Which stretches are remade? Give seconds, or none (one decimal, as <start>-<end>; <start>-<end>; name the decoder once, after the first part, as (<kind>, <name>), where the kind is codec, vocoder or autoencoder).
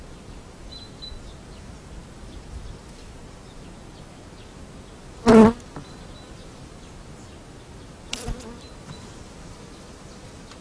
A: none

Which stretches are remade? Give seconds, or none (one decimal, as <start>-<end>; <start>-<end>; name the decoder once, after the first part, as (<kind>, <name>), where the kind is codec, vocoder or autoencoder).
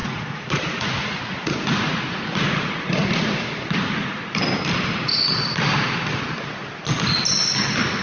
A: 0.0-4.2 (vocoder, Vocos)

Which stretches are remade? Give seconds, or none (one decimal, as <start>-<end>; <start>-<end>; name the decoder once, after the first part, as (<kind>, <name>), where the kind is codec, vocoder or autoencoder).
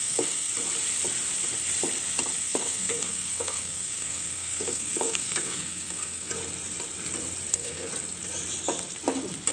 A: 0.0-0.5 (codec, SNAC); 2.4-6.3; 7.5-7.9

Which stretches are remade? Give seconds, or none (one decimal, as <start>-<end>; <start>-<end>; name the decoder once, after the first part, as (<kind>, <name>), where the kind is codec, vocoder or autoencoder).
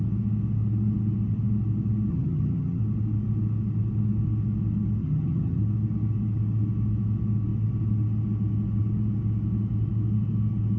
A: 2.1-2.8 (vocoder, HiFi-GAN); 5.0-5.6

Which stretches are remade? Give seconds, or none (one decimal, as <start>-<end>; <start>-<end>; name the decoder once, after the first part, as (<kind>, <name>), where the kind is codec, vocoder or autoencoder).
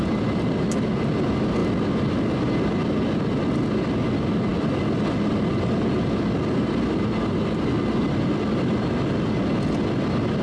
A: none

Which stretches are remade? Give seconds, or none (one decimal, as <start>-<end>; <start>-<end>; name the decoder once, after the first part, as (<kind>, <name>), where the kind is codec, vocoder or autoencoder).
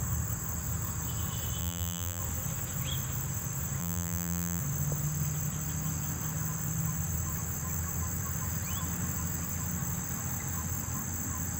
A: 1.6-2.2 (vocoder, BigVGAN v2); 3.8-4.6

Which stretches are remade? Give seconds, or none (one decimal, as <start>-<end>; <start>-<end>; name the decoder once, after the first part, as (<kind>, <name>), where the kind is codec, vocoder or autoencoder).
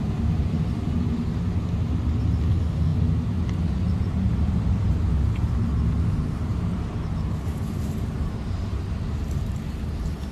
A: 7.5-9.9 (vocoder, BigVGAN v2)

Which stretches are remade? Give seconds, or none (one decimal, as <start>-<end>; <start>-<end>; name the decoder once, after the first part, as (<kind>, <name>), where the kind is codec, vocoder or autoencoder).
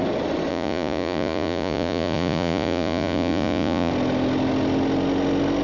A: 0.5-3.9 (vocoder, Vocos)